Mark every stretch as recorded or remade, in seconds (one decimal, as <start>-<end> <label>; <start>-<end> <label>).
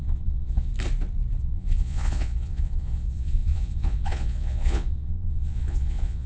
0.0-0.7 remade; 0.7-1.4 recorded; 1.4-6.3 remade